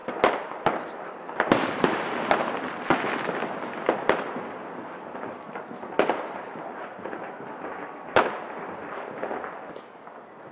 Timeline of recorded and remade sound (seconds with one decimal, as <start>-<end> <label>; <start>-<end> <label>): 0.0-3.1 remade; 3.1-10.5 recorded

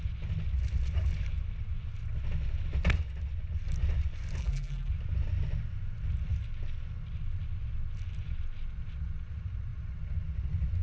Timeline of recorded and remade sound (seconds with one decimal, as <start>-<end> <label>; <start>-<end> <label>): 0.0-4.4 recorded; 4.4-4.9 remade; 4.9-10.8 recorded

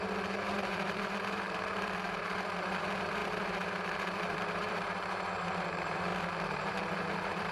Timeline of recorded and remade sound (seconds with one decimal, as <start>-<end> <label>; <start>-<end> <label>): 0.0-7.5 remade

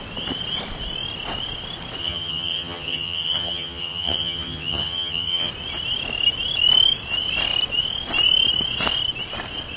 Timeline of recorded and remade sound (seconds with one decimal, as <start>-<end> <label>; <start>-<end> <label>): 0.0-2.0 recorded; 2.0-5.5 remade; 5.5-9.8 recorded